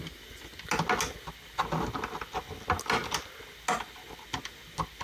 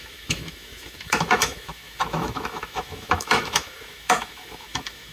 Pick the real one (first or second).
first